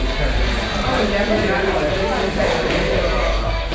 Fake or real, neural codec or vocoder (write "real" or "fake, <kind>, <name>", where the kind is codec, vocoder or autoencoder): real